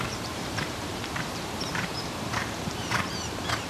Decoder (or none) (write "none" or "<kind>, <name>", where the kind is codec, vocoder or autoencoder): vocoder, BigVGAN v2